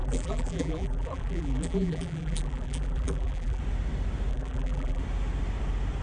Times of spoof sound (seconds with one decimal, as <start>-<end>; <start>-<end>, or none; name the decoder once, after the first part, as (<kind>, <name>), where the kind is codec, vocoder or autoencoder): 0.0-3.6 (vocoder, BigVGAN v2); 4.3-5.0